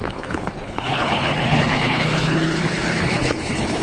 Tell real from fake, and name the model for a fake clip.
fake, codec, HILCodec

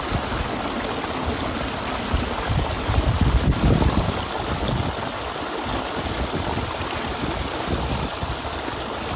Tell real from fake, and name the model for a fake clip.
real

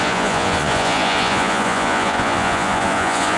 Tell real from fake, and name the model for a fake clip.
fake, vocoder, Vocos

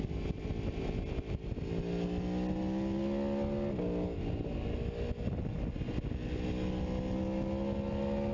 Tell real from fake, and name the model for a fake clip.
real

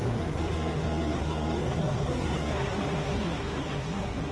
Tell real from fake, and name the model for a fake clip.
fake, codec, SNAC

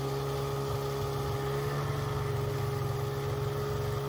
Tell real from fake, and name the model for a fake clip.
real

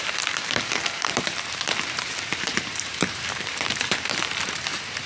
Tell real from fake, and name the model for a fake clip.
fake, vocoder, BigVGAN v2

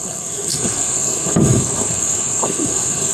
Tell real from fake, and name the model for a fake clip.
fake, codec, SNAC